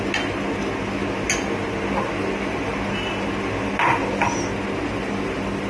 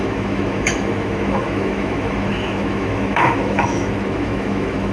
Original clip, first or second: first